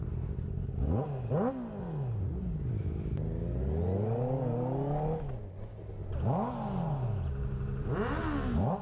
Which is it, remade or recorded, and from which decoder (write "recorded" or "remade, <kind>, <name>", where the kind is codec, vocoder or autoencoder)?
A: recorded